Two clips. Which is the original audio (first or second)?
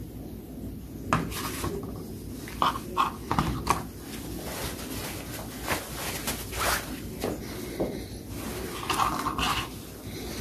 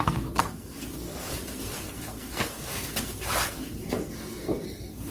first